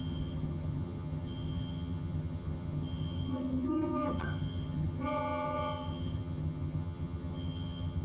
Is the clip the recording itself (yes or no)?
no